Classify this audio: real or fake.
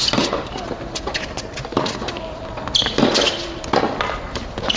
real